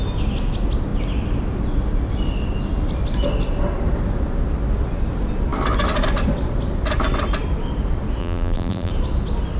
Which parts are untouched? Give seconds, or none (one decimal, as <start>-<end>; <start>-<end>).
0.0-8.2; 8.9-9.6